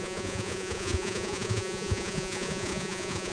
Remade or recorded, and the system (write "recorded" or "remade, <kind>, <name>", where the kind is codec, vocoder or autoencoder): remade, vocoder, Vocos